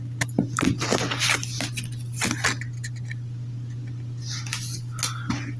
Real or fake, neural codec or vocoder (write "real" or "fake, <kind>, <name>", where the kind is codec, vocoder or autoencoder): real